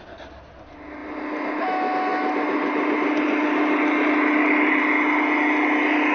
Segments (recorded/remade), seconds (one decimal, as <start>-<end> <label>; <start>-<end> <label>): 0.0-6.1 recorded